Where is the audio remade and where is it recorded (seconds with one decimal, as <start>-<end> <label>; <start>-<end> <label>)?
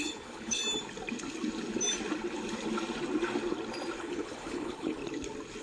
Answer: 0.0-0.6 remade; 0.6-4.0 recorded; 4.0-5.0 remade; 5.0-5.6 recorded